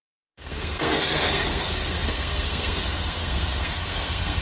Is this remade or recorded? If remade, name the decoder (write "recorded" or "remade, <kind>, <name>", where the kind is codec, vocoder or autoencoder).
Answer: remade, codec, SNAC